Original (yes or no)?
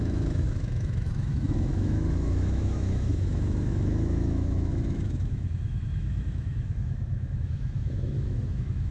no